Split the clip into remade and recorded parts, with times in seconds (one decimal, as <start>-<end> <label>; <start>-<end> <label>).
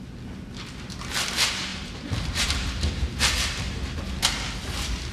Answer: 0.0-1.7 recorded; 1.7-4.0 remade; 4.0-5.1 recorded